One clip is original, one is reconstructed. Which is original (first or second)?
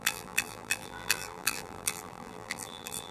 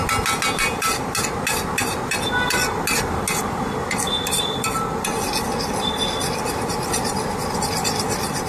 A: second